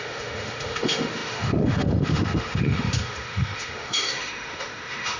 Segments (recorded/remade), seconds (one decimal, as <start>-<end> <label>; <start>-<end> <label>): 0.0-5.2 remade